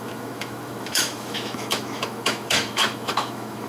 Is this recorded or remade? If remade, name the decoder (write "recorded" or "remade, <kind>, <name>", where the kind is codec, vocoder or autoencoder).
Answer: remade, autoencoder, DAC-VAE